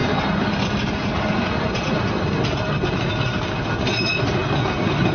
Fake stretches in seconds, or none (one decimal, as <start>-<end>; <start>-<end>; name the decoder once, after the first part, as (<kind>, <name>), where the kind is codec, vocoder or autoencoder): none